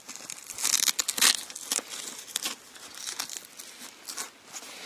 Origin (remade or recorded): recorded